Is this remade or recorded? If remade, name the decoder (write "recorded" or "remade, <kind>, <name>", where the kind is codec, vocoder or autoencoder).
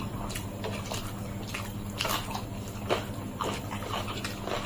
recorded